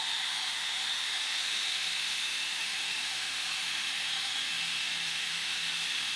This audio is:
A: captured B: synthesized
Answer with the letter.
B